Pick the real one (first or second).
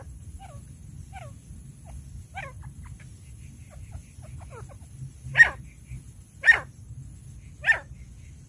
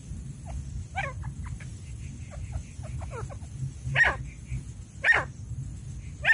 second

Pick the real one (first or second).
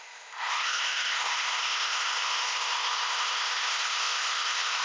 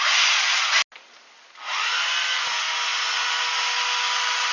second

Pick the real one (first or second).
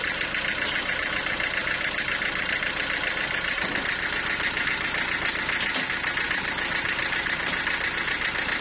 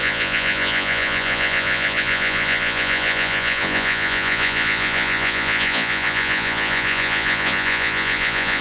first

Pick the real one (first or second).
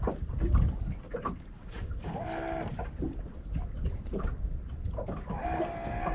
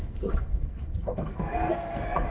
first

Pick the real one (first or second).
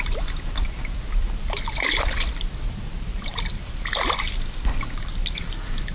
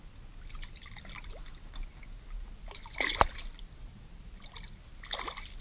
second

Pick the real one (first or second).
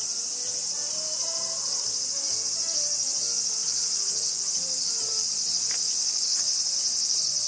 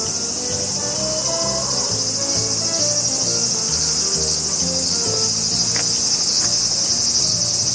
second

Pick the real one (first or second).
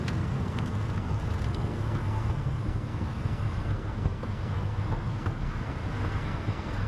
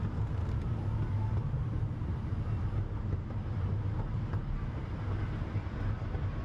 second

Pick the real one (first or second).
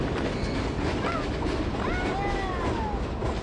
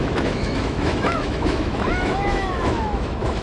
first